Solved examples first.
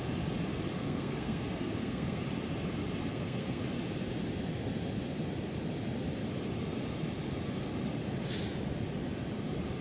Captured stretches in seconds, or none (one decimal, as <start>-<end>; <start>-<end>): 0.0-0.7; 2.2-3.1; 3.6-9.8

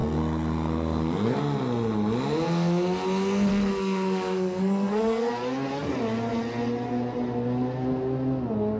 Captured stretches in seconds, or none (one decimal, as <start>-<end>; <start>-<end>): 1.4-3.5; 5.3-8.8

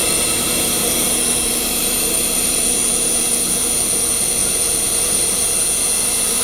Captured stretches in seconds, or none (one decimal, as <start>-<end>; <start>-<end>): 3.8-4.4; 5.4-6.4

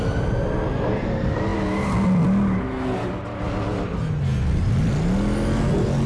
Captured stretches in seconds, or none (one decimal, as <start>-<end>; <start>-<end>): 0.0-6.1

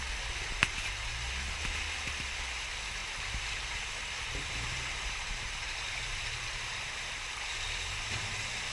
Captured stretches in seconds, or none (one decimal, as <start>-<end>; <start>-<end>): 0.0-3.0; 7.1-8.7